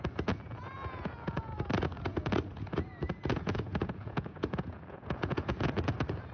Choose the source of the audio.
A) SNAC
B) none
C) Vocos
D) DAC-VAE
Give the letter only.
C